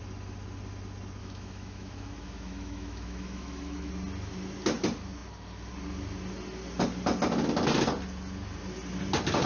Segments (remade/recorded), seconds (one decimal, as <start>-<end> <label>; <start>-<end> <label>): 0.0-1.2 recorded; 1.2-3.9 remade; 3.9-9.5 recorded